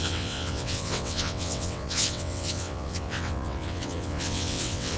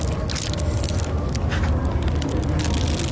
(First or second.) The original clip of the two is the second